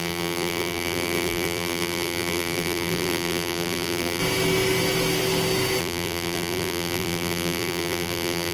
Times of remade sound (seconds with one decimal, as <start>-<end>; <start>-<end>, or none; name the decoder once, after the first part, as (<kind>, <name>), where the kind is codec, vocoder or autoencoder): 0.0-4.2 (vocoder, BigVGAN v2); 5.8-8.5